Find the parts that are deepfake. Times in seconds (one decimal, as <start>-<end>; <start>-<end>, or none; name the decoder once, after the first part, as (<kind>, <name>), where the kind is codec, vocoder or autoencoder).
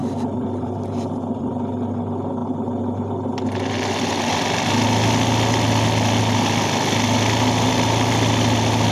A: 0.0-1.5 (vocoder, BigVGAN v2)